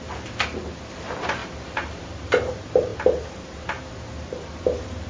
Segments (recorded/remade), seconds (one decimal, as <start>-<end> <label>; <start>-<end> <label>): 0.0-1.4 recorded; 1.4-2.5 remade; 2.5-5.1 recorded